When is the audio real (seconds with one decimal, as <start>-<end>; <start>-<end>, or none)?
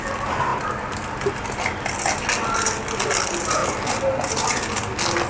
0.0-5.3